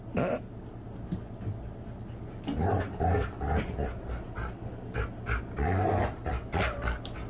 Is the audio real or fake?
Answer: real